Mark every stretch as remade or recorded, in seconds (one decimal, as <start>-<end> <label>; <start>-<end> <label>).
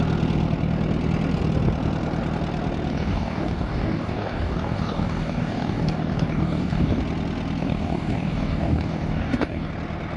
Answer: 0.0-2.9 recorded; 2.9-7.0 remade; 7.0-7.6 recorded; 7.6-9.7 remade; 9.7-10.2 recorded